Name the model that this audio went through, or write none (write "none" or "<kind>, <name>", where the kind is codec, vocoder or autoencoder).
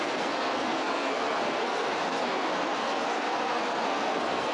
codec, SNAC